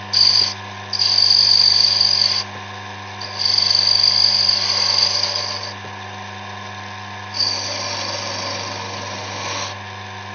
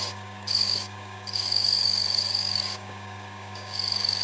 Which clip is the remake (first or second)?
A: second